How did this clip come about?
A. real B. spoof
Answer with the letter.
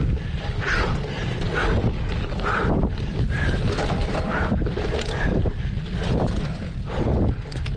A